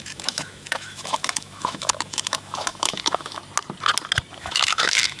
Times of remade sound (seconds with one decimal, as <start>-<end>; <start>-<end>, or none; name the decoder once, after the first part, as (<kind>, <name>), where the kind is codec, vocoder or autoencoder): 0.0-3.4 (autoencoder, DAC-VAE); 4.4-5.2